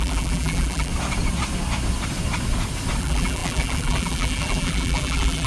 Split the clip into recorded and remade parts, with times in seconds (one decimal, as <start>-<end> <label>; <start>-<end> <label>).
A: 0.0-0.9 remade; 0.9-3.0 recorded; 3.0-5.5 remade